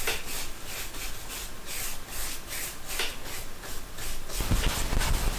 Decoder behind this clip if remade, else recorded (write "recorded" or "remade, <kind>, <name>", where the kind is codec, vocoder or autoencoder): recorded